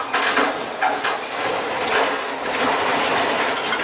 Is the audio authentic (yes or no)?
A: yes